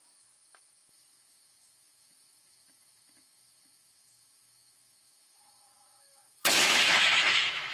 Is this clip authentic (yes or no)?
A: no